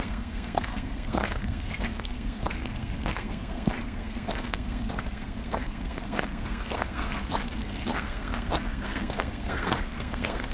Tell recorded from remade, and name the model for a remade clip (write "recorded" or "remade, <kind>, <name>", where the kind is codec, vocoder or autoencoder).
remade, codec, SNAC